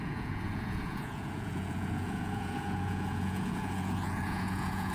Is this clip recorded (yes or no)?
no